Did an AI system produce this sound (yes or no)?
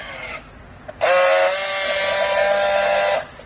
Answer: no